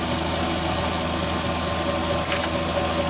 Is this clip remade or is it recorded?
recorded